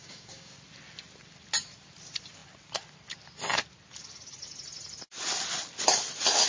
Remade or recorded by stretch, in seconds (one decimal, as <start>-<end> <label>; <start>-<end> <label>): 0.0-0.5 remade; 0.5-6.5 recorded